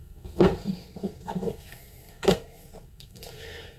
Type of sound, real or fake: fake